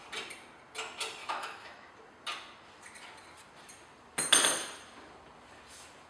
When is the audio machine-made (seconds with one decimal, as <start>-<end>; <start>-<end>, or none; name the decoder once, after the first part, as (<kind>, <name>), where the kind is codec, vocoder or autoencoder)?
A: 1.2-1.9 (autoencoder, DAC-VAE)